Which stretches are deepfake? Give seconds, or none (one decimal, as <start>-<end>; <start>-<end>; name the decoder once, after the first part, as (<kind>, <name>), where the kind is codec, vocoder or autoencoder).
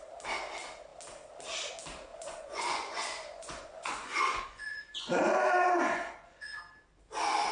2.1-6.6 (vocoder, Vocos)